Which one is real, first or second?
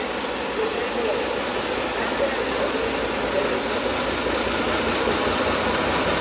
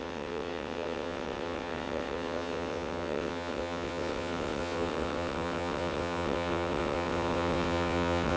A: first